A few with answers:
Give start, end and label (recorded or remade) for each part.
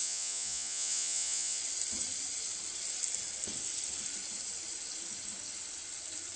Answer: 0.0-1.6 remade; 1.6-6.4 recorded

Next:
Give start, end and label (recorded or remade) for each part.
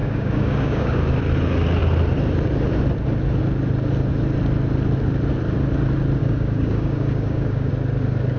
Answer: 0.0-1.0 remade; 1.0-6.2 recorded; 6.2-7.7 remade; 7.7-8.4 recorded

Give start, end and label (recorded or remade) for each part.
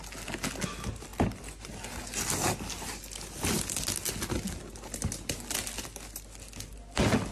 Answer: 0.0-7.3 recorded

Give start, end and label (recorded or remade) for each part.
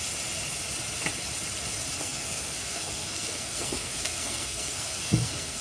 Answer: 0.0-2.0 recorded; 2.0-5.6 remade